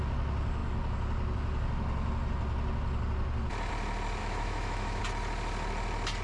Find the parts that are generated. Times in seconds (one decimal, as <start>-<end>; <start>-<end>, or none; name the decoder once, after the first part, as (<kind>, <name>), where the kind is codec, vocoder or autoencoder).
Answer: 4.2-5.0 (autoencoder, DAC-VAE)